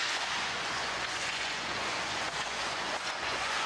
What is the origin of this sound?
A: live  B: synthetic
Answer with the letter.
B